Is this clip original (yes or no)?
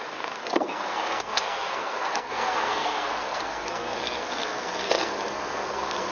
no